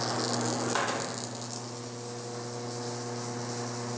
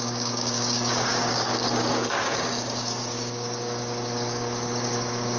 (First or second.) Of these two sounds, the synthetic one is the second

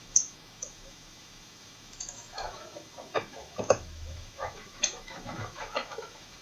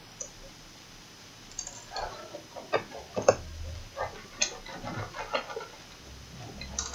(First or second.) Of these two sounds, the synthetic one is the first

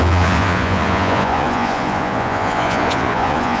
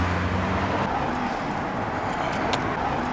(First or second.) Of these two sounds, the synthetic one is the first